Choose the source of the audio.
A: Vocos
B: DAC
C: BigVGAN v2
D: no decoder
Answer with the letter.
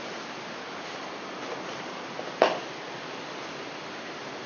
D